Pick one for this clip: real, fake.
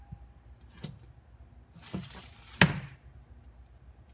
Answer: real